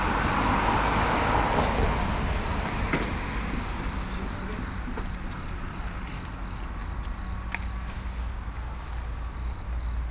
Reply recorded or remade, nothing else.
recorded